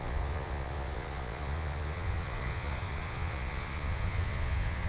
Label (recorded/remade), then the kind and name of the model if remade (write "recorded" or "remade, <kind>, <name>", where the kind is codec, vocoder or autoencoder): remade, vocoder, Vocos